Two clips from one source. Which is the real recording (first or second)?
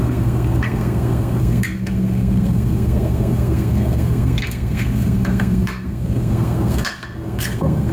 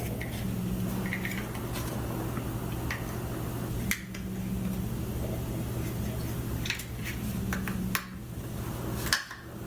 second